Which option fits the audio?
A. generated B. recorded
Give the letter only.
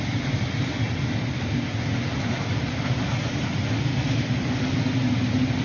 B